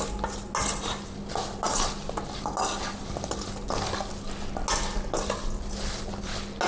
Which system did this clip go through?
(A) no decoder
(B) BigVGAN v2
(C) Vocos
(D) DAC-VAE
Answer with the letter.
A